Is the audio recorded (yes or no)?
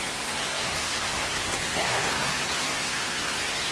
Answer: no